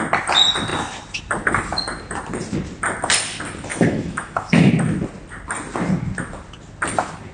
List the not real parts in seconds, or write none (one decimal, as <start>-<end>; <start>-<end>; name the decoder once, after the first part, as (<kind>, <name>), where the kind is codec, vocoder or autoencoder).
3.7-4.7 (autoencoder, DAC-VAE)